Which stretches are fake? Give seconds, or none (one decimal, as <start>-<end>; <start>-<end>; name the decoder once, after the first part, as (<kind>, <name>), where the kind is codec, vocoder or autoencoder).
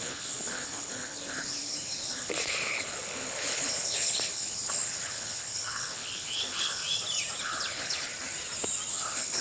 0.0-6.8 (codec, HILCodec); 7.4-8.1; 8.9-9.4